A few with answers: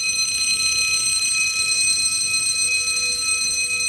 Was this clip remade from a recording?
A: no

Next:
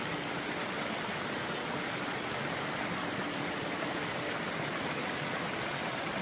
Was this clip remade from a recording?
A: no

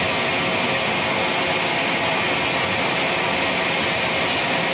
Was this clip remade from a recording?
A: no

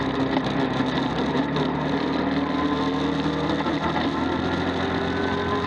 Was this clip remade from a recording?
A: no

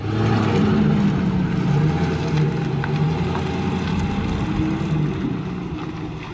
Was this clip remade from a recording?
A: no